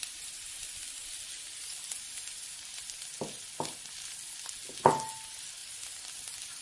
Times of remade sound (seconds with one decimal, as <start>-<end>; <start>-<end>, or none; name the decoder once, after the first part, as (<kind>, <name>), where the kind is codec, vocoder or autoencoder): none